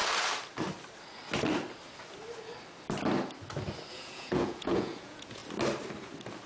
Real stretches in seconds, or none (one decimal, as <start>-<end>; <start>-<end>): 0.0-3.9; 5.4-6.5